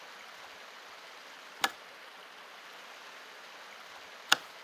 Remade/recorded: recorded